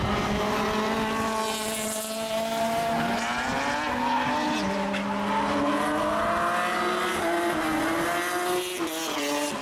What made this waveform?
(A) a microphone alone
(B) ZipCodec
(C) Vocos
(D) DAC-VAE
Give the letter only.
A